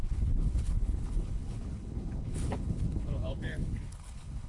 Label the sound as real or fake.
fake